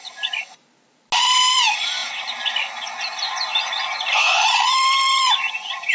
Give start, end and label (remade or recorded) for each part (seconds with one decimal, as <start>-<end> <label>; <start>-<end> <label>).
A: 0.0-5.9 recorded